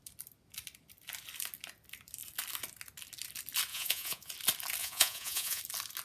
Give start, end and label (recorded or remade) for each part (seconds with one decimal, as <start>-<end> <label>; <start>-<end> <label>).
0.0-3.7 recorded; 3.7-4.3 remade; 4.3-4.8 recorded; 4.8-5.6 remade; 5.6-6.0 recorded